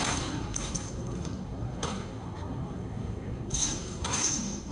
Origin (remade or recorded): remade